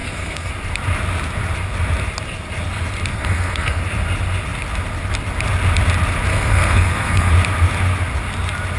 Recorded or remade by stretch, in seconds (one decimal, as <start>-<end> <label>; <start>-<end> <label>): 0.0-0.5 remade; 0.5-3.1 recorded; 3.1-3.8 remade; 3.8-6.3 recorded; 6.3-7.3 remade; 7.3-8.8 recorded